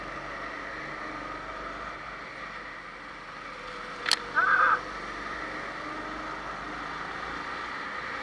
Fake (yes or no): no